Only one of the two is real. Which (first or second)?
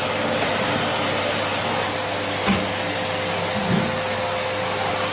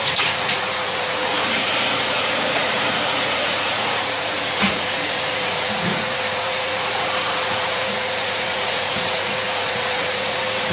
first